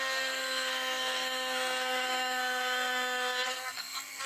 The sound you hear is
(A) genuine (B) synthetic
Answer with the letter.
B